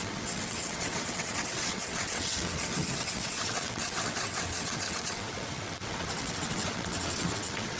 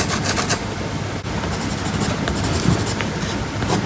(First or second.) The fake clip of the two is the first